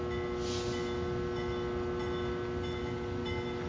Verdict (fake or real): real